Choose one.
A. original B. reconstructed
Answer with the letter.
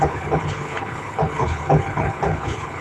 B